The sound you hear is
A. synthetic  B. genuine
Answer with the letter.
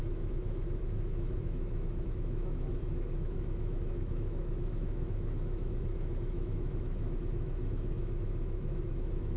A